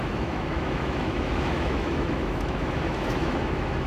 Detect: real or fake fake